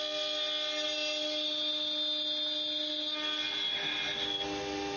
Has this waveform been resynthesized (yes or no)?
no